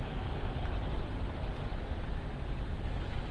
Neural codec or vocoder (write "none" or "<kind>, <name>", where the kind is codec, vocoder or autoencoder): none